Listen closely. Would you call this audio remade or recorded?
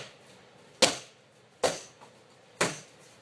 recorded